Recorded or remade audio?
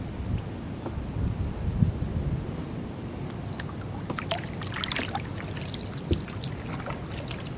recorded